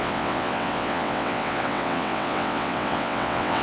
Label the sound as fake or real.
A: fake